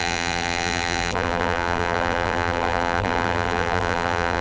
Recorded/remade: remade